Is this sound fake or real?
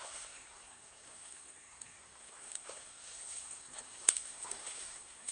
fake